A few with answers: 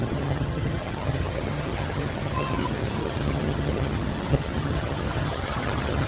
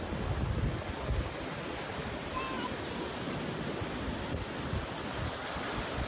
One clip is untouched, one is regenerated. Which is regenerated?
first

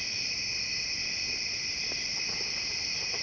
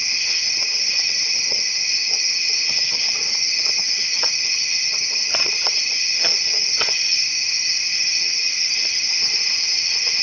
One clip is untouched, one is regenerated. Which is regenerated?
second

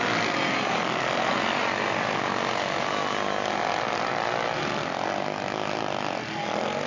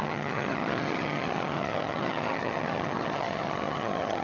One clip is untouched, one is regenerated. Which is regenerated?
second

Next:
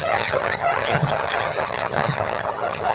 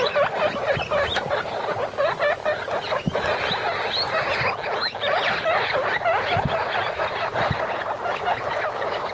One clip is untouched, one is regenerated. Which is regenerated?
first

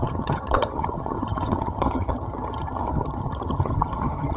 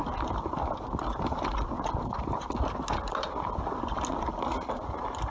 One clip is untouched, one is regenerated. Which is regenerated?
first